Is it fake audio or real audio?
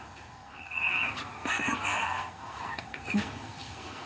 fake